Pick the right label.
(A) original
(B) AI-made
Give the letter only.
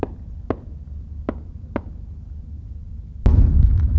A